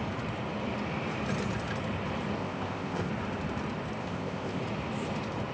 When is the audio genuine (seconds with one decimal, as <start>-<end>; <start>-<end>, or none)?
0.0-2.4; 3.1-4.0; 4.6-5.5